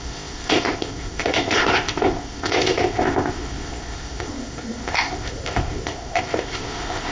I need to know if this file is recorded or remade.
remade